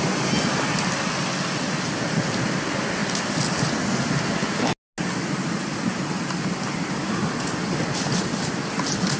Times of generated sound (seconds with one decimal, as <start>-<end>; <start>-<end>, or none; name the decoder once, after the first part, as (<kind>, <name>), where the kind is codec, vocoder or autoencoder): none